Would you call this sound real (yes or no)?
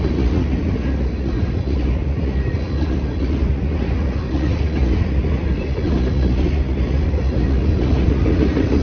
no